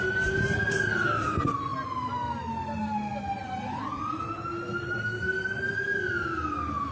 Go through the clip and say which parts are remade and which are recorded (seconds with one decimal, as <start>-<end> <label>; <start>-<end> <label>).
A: 0.0-6.9 recorded